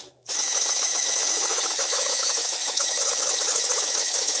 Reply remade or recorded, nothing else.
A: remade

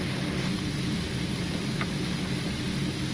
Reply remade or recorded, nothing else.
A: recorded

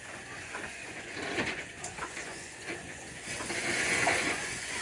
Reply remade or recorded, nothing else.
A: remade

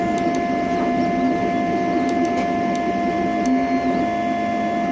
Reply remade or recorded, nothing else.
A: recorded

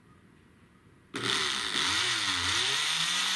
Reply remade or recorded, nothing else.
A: recorded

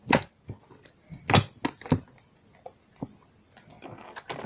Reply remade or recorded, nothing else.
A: recorded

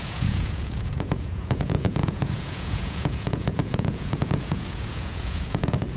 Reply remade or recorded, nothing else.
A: remade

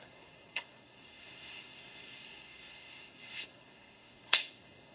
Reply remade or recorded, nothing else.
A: remade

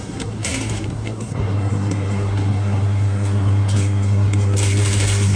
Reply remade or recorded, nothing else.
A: remade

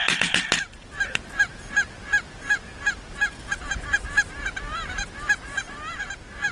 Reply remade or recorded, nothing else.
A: remade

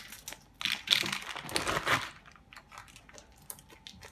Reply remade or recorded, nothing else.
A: recorded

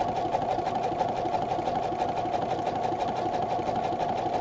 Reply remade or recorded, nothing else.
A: recorded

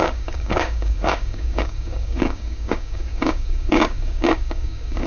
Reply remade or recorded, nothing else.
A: remade